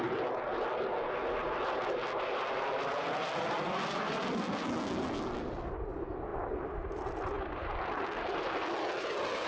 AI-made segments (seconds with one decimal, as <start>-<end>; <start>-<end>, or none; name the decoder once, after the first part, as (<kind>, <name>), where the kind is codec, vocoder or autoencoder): none